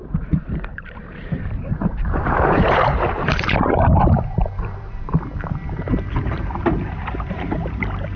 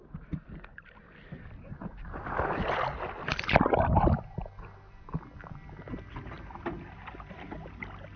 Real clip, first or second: second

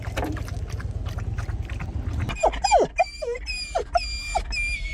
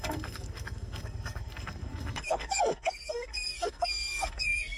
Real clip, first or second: first